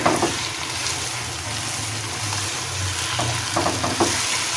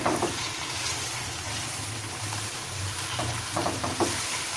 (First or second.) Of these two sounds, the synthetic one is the second